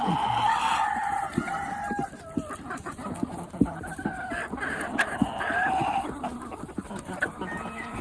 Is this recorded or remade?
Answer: recorded